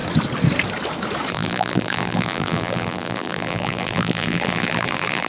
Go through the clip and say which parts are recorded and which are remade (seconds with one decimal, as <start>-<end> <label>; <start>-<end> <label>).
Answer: 0.0-1.3 recorded; 1.3-5.3 remade